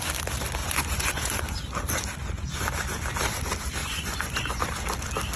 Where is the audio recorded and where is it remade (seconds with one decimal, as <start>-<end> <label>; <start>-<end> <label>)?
0.0-0.6 recorded; 0.6-1.4 remade; 1.4-3.8 recorded; 3.8-4.6 remade; 4.6-5.4 recorded